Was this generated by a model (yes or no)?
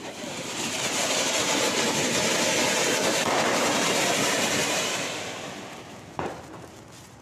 yes